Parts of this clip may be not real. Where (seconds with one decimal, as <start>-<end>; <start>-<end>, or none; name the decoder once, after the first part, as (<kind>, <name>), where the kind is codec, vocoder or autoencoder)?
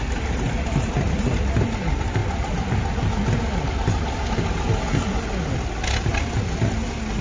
none